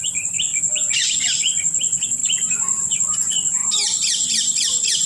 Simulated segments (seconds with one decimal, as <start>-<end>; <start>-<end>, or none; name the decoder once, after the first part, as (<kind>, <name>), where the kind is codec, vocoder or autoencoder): 0.0-0.5 (vocoder, BigVGAN v2); 1.4-5.1